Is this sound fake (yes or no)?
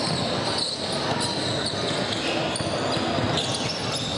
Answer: no